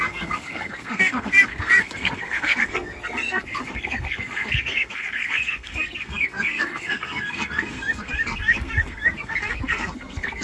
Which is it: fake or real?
fake